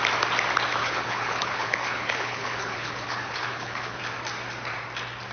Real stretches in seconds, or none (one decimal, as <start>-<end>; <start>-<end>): 0.0-0.8; 4.0-5.3

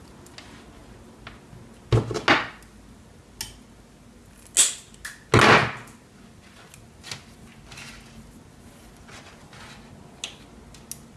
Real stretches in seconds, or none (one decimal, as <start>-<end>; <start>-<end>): 0.0-11.2

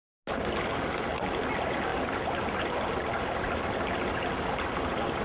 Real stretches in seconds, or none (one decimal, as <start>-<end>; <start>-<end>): 0.0-5.2